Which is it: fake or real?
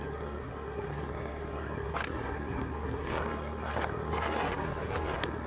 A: fake